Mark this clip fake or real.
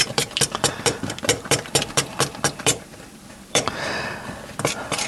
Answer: fake